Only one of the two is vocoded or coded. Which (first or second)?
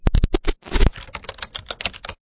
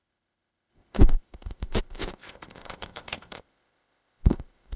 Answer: second